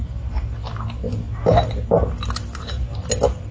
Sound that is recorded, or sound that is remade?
recorded